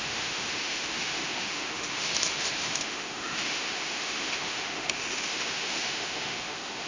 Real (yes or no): no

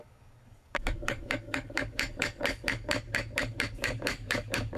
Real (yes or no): no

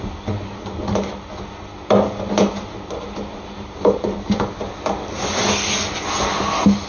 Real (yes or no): yes